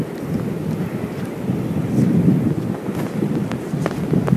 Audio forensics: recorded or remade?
recorded